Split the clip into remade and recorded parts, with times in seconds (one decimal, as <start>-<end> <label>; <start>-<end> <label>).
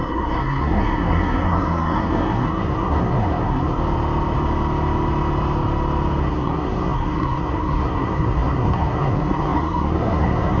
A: 0.0-3.8 remade; 3.8-6.2 recorded; 6.2-10.6 remade